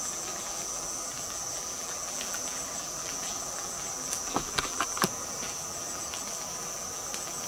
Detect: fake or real fake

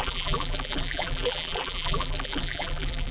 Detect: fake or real fake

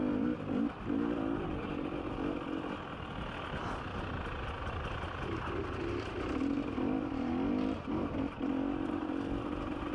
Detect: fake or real real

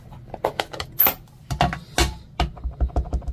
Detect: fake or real real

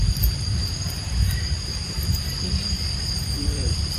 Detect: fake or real fake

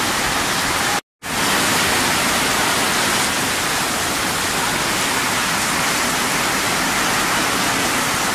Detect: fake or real real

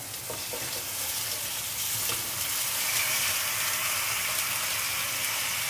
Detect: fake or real real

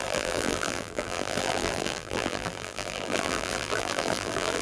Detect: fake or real fake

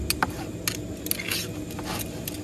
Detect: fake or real real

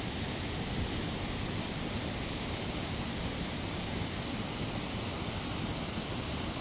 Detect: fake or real real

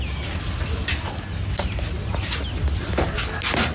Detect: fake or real real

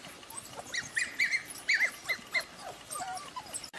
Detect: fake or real real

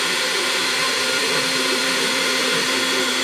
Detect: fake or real fake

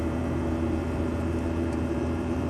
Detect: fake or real fake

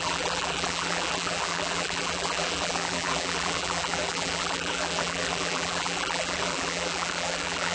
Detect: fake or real fake